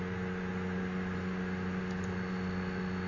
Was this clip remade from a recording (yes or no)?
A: no